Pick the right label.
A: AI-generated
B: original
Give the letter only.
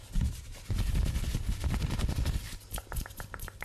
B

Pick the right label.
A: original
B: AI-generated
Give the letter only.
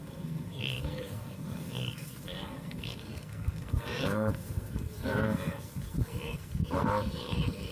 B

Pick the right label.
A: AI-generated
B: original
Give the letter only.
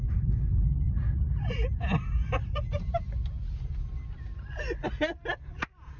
B